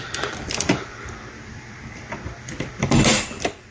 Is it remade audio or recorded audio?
remade